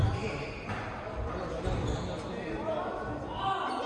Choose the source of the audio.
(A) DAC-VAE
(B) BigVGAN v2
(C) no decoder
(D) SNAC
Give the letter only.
C